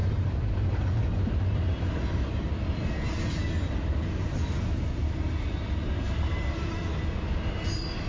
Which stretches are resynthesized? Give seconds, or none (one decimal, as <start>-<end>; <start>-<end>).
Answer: 0.0-0.8